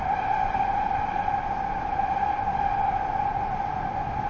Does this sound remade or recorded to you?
recorded